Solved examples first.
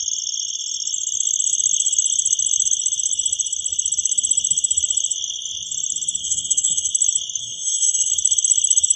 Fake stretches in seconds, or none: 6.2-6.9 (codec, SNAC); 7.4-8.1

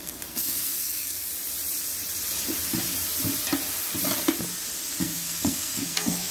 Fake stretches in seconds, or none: 0.0-1.3 (codec, SNAC); 5.0-6.3

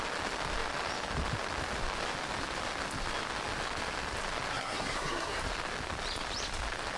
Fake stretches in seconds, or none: 4.5-5.4 (codec, SNAC)

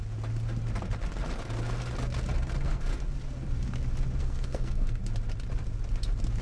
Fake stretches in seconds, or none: 2.4-2.9 (codec, SNAC); 4.2-5.0